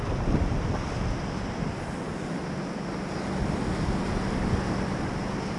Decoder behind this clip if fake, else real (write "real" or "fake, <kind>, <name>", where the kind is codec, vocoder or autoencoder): real